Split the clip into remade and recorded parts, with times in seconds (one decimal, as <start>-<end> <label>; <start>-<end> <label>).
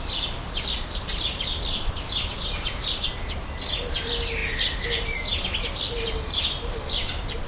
0.0-4.4 remade; 4.4-5.5 recorded; 5.5-7.5 remade